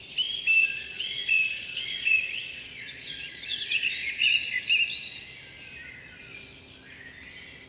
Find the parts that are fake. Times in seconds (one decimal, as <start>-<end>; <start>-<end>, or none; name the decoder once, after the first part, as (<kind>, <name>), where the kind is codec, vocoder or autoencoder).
0.6-4.6 (vocoder, Vocos)